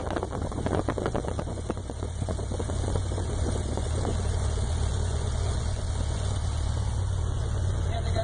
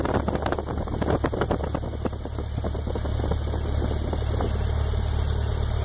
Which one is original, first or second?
second